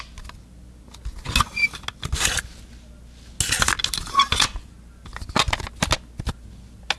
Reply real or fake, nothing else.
real